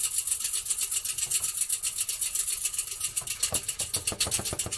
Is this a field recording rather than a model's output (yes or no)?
yes